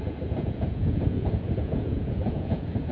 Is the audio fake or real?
fake